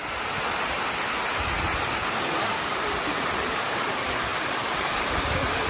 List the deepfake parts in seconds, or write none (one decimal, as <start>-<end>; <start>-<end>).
2.7-5.7

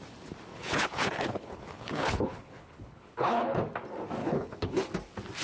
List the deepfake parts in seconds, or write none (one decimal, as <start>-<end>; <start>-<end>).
0.5-3.6; 4.2-4.8